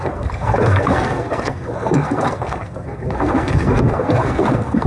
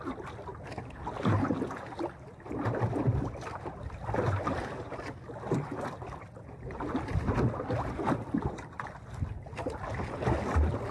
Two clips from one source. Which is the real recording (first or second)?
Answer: second